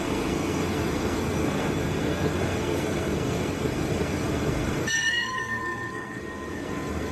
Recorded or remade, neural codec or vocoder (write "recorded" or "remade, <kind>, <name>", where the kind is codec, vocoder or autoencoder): remade, codec, SNAC